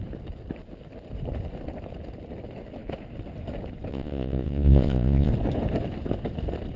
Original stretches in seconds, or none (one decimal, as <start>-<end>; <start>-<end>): 0.0-3.9; 5.3-6.8